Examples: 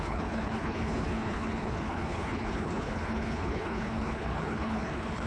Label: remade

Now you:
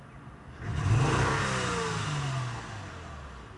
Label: recorded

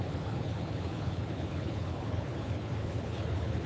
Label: remade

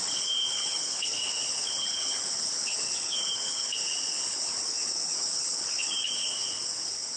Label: remade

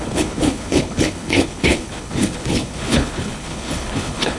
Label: remade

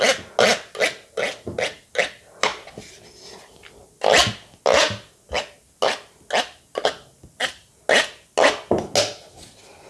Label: recorded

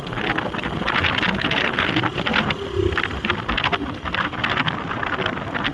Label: recorded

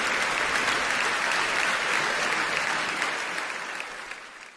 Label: recorded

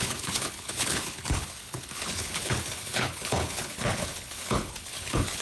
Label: remade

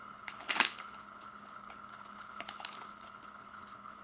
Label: remade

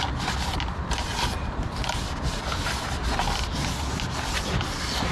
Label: recorded